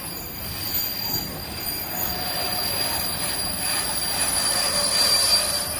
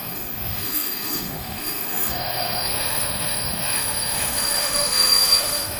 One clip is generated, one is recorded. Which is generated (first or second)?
second